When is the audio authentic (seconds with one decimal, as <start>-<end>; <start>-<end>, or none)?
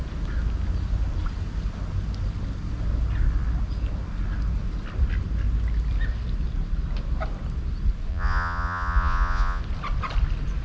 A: 0.0-8.1; 9.6-10.6